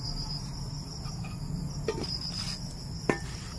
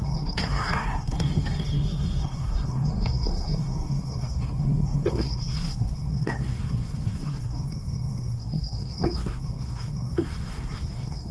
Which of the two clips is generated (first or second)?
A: second